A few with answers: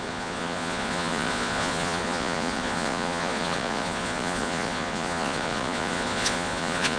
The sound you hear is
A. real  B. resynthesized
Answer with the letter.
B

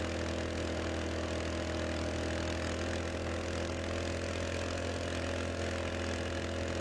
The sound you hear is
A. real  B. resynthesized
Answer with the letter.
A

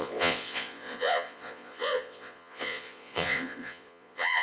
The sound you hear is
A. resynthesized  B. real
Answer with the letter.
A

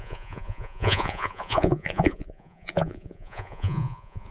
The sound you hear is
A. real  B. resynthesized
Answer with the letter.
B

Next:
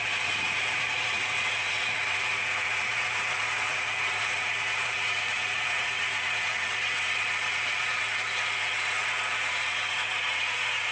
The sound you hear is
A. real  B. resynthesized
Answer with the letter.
B